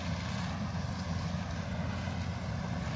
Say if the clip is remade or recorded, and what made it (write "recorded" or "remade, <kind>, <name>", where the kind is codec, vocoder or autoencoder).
recorded